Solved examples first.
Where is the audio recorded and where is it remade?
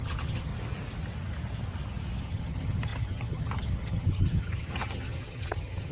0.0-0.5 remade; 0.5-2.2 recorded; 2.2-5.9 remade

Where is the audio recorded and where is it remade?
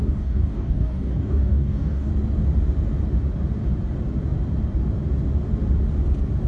0.0-2.1 remade; 2.1-6.5 recorded